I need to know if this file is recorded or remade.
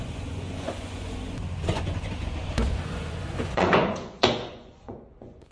remade